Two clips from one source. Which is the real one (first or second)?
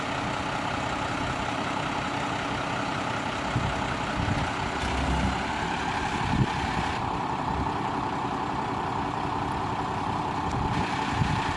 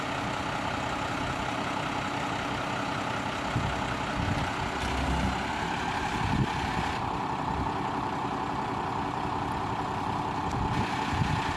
second